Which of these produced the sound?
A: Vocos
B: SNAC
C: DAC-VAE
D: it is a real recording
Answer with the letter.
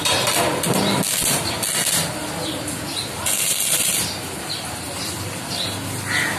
D